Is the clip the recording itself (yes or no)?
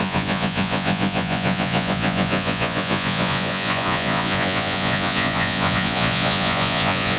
no